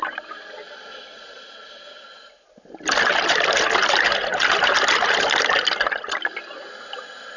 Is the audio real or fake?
real